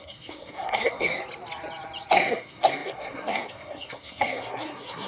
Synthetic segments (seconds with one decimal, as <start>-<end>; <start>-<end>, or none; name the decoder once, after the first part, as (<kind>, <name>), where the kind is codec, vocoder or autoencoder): 0.0-1.1 (codec, SNAC); 2.1-5.1